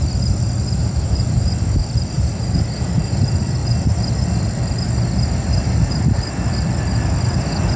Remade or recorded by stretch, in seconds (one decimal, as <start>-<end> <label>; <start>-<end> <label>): 0.0-0.8 recorded; 0.8-1.4 remade; 1.4-7.8 recorded